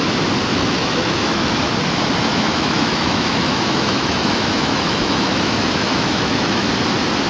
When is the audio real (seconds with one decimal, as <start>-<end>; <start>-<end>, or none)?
0.0-0.5; 1.5-2.3; 6.7-7.3